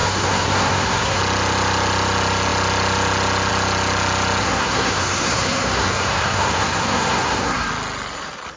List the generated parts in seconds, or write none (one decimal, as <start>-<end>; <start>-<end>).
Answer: 0.0-1.2; 4.4-7.7